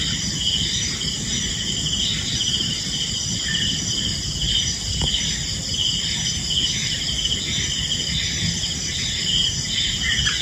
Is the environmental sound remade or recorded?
recorded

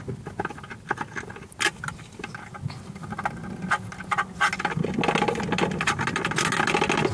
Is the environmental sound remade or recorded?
recorded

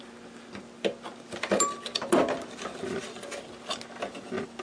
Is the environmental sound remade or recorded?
recorded